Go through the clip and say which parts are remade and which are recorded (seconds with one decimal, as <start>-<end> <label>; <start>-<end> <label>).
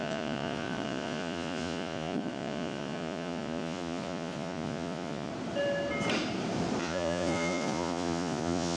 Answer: 0.0-5.3 remade; 5.3-6.8 recorded; 6.8-8.8 remade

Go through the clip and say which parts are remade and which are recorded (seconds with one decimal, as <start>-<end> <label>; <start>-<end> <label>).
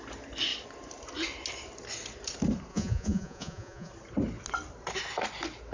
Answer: 0.0-2.7 recorded; 2.7-3.9 remade; 3.9-5.7 recorded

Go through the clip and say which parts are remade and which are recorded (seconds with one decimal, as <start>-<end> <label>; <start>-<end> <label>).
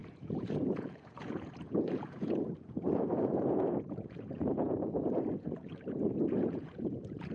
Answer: 0.0-7.3 remade